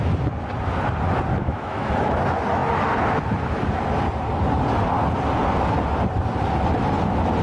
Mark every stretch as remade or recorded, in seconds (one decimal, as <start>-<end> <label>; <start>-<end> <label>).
0.0-1.3 recorded; 1.3-2.2 remade; 2.2-7.4 recorded